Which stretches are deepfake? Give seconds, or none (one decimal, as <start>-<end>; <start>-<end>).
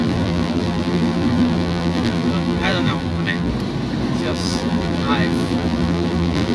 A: 0.0-3.5; 4.2-6.5